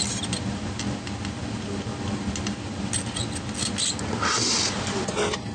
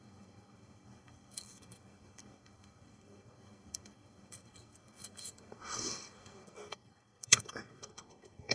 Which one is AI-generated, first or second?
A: second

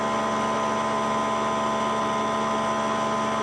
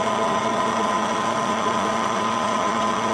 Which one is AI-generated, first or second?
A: second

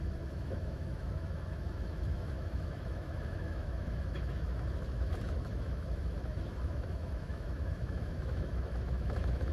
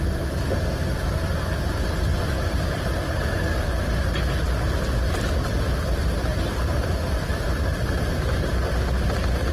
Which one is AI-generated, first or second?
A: first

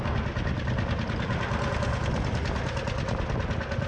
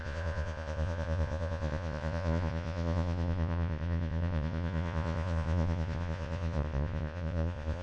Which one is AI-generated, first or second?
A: second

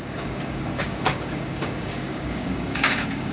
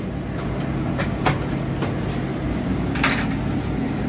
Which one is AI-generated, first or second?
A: first